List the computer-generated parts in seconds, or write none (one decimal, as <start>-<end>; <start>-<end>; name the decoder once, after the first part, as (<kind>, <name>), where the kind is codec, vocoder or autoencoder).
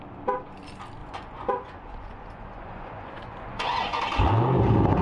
1.0-4.0 (vocoder, Vocos)